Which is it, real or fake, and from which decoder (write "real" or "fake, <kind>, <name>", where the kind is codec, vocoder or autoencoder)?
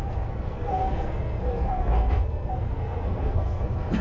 fake, codec, SNAC